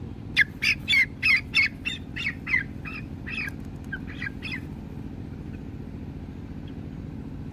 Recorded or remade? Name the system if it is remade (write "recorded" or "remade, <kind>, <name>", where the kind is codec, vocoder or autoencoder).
recorded